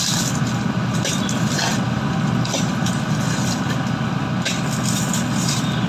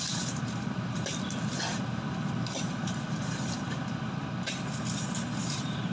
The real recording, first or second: first